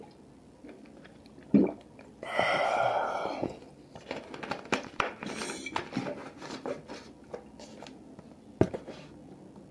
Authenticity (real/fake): real